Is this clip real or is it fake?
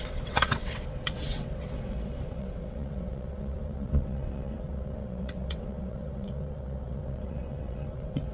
fake